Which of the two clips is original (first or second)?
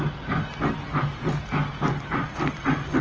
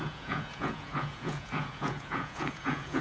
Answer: first